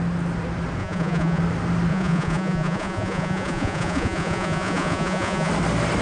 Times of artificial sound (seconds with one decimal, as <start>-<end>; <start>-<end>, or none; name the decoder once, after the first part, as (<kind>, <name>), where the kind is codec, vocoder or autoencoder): 0.8-1.4 (vocoder, Vocos); 1.9-5.5